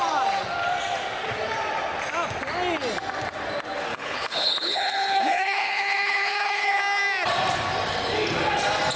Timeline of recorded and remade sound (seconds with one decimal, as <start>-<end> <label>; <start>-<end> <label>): 0.0-3.9 recorded; 3.9-6.8 remade; 6.8-9.0 recorded